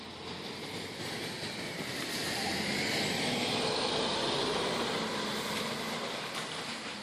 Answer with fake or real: fake